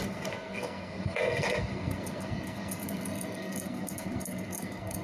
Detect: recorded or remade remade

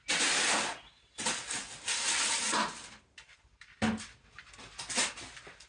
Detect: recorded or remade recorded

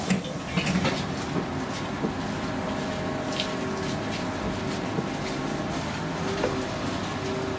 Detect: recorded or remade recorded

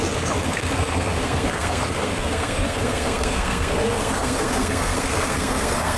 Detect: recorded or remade remade